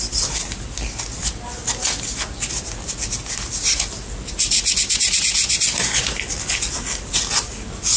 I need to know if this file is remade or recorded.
recorded